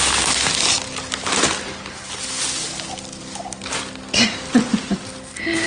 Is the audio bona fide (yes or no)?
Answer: yes